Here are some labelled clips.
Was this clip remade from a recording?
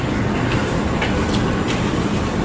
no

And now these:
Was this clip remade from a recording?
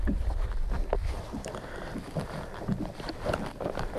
no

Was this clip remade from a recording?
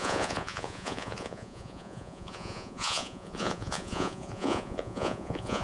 yes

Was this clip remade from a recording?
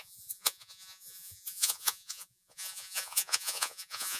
yes